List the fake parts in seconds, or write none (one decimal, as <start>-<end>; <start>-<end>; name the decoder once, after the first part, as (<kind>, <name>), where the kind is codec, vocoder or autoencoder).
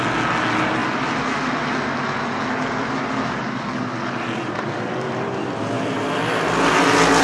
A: none